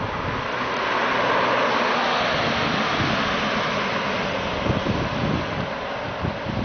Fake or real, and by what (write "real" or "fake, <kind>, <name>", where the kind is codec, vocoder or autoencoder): real